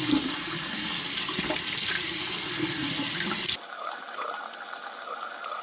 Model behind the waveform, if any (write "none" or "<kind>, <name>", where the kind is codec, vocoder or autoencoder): none